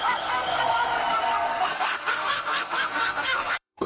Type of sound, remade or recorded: remade